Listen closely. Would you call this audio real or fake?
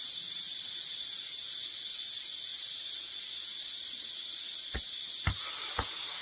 real